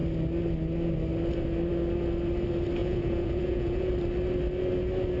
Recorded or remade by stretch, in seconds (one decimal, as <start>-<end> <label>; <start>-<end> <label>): 0.0-2.8 recorded; 2.8-3.9 remade; 3.9-5.2 recorded